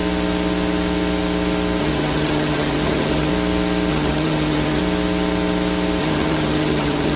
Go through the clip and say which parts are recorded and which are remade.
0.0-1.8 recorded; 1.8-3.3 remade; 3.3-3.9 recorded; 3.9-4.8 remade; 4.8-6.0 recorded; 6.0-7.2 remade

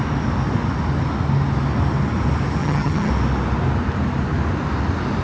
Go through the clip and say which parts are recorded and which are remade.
0.0-2.6 recorded; 2.6-3.1 remade; 3.1-5.2 recorded

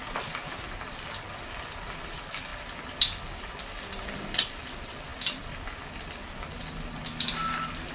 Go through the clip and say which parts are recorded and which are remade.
0.0-7.9 recorded

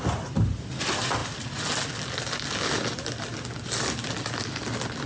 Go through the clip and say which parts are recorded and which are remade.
0.0-5.1 recorded

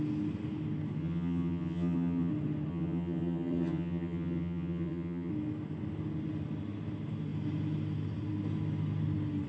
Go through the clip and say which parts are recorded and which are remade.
0.0-1.0 recorded; 1.0-2.3 remade; 2.3-2.7 recorded; 2.7-5.3 remade; 5.3-9.5 recorded

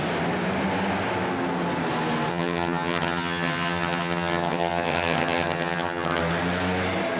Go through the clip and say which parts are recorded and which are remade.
0.0-2.3 recorded; 2.3-6.2 remade; 6.2-7.2 recorded

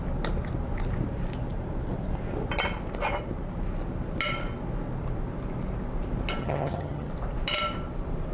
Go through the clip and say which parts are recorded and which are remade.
0.0-6.4 recorded; 6.4-7.1 remade; 7.1-8.3 recorded